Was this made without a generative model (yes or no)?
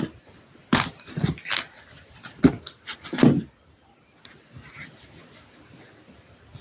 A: yes